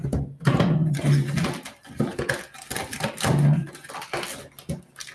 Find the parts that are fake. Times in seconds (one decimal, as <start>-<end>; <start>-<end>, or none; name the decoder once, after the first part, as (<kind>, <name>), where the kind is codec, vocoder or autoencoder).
none